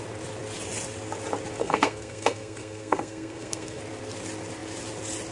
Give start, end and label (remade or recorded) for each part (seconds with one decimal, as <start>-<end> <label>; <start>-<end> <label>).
0.0-1.6 recorded; 1.6-3.8 remade; 3.8-5.3 recorded